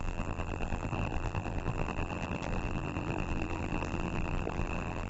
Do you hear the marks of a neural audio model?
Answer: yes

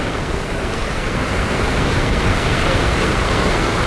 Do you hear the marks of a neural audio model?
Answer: yes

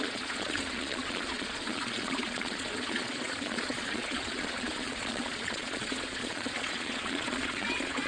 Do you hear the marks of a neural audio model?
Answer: yes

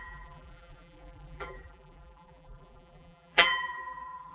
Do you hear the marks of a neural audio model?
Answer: yes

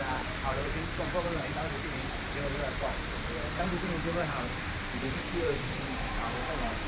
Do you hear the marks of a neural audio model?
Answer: yes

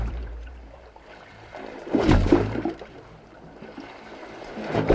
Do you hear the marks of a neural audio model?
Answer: yes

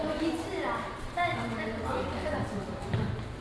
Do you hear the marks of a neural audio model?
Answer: yes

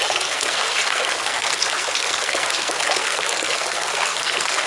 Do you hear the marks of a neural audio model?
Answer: yes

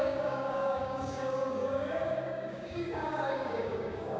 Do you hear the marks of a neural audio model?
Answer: yes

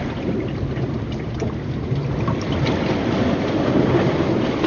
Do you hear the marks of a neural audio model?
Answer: no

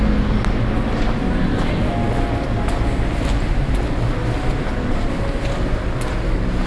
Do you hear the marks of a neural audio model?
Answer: no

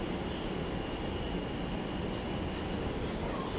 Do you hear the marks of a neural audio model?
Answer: no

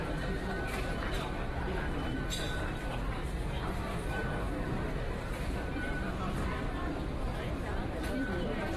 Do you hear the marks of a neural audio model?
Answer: yes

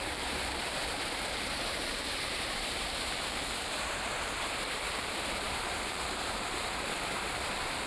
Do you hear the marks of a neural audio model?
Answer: yes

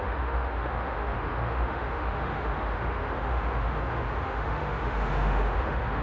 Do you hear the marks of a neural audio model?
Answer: yes